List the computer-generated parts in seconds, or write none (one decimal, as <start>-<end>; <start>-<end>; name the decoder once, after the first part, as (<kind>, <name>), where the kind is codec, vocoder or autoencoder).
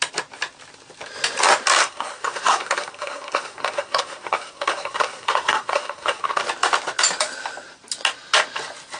1.8-6.4 (codec, SNAC)